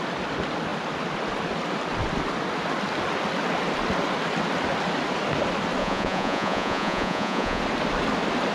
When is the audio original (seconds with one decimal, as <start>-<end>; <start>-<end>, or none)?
0.0-5.8; 7.6-8.5